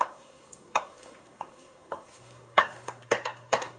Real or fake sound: fake